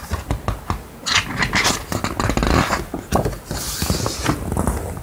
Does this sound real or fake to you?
real